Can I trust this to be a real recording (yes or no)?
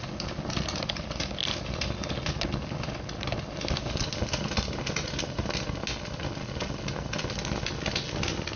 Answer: yes